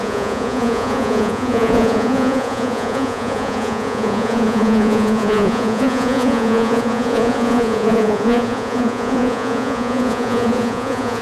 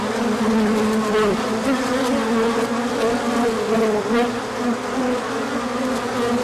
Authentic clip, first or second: second